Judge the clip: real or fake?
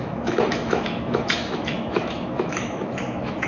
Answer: fake